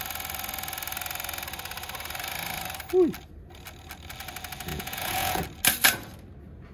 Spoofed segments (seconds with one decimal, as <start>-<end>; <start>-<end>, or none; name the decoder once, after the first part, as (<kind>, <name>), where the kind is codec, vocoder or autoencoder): 4.7-5.4 (vocoder, Vocos)